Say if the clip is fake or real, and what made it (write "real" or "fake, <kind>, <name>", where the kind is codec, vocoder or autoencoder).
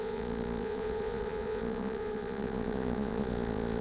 fake, vocoder, Vocos